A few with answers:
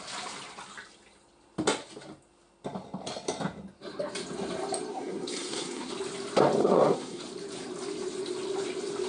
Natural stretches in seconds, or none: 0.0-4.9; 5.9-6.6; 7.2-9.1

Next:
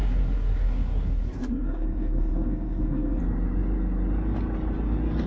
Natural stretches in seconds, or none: 3.2-5.3